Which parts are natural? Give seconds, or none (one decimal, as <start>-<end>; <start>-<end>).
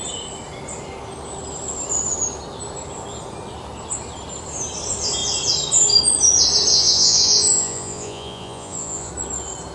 0.0-6.7; 9.1-9.7